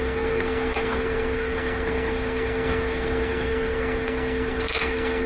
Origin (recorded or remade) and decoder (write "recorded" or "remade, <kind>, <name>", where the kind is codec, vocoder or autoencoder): remade, codec, SNAC